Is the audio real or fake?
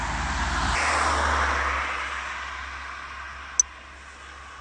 real